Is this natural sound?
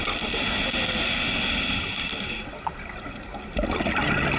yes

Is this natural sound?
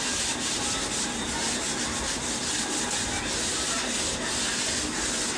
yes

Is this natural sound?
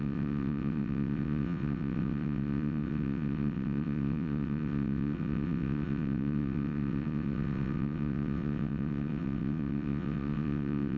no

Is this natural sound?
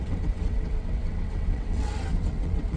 no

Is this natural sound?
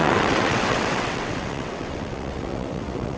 no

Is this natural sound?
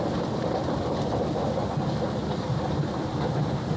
yes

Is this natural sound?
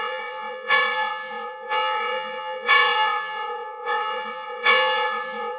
no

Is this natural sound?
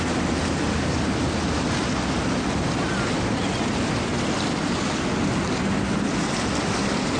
yes